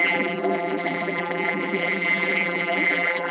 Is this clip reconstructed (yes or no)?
yes